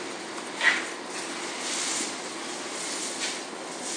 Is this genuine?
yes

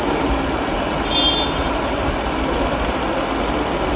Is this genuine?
yes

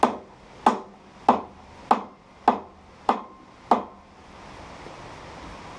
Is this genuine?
yes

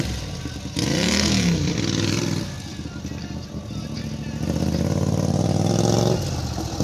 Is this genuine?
yes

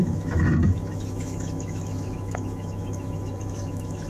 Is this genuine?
no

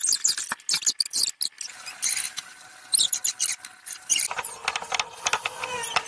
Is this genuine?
yes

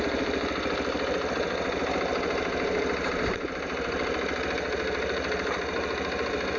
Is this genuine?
no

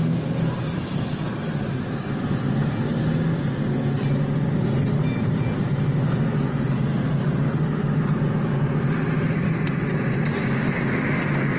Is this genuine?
yes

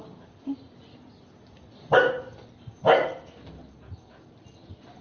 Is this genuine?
yes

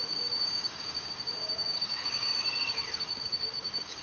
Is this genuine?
no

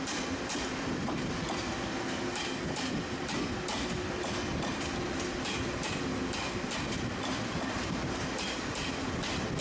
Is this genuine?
yes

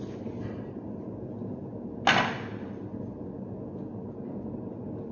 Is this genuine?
yes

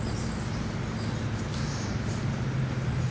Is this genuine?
yes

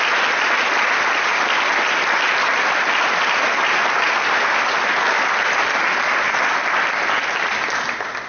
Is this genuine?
yes